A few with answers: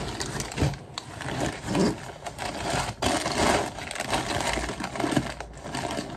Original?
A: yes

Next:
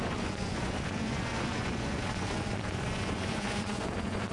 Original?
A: no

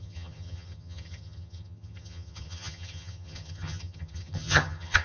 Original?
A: no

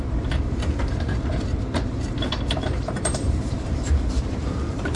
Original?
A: no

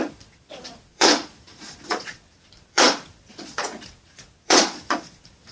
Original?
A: no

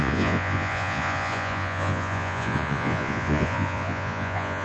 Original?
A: no